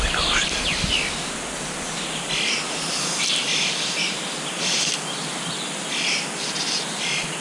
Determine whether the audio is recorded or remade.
recorded